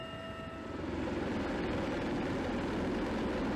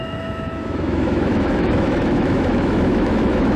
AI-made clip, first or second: second